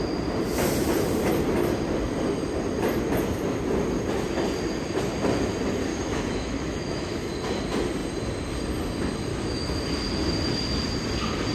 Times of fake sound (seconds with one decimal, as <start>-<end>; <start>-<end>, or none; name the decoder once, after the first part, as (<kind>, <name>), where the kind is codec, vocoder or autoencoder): 5.9-7.3 (autoencoder, DAC-VAE); 9.3-9.8